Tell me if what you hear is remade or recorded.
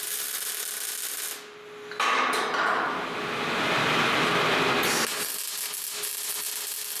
recorded